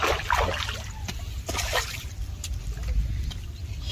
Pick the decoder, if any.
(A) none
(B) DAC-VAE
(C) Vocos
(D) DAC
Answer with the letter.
A